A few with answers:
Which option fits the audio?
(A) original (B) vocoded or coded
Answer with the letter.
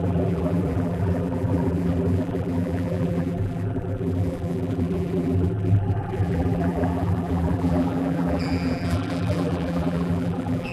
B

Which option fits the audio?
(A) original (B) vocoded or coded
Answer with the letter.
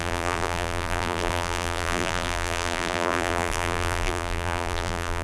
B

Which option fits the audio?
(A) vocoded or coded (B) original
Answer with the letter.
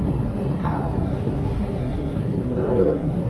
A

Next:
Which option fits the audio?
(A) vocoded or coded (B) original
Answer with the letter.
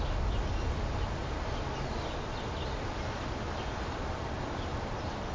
B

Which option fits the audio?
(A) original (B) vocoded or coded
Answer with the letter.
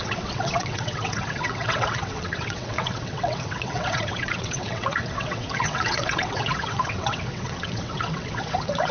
B